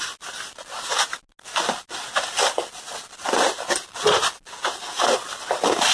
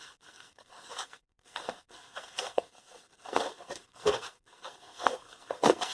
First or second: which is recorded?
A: first